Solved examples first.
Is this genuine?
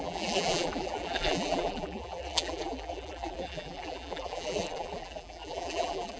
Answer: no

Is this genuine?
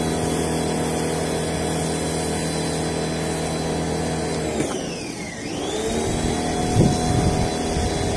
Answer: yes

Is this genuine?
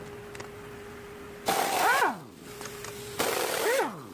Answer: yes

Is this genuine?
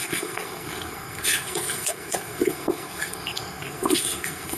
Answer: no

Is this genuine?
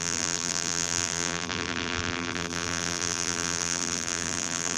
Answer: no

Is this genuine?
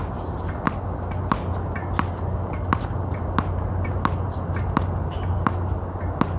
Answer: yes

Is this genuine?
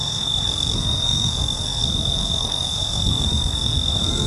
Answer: no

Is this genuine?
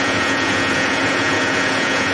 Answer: no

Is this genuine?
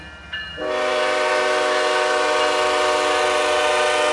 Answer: yes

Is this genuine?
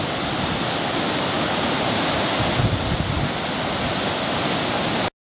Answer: yes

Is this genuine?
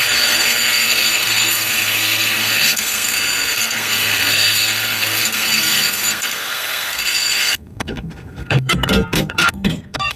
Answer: no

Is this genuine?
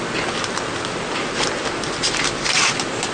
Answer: yes